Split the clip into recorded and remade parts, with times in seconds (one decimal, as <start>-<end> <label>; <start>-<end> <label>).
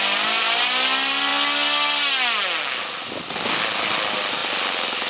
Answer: 0.0-5.1 recorded